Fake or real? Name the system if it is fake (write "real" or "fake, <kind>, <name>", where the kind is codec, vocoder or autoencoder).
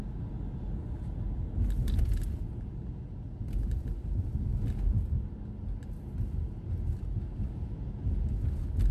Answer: real